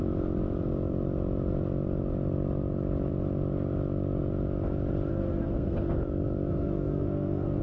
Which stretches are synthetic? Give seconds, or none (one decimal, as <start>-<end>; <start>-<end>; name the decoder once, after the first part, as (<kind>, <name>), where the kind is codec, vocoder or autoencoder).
5.1-6.0 (codec, SNAC); 6.5-7.6